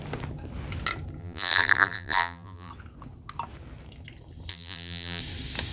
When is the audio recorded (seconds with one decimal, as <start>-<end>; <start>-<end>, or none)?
0.0-1.2; 2.7-4.5; 5.2-5.7